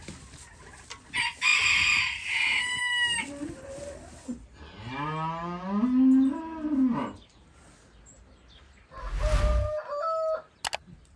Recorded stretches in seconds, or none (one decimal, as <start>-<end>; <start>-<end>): 0.0-11.2